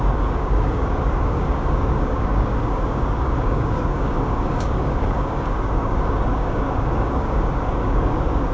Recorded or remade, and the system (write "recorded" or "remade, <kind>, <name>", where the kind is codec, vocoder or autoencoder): remade, codec, DAC